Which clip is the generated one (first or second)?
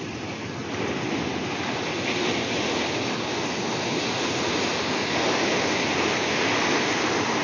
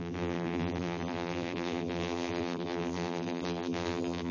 second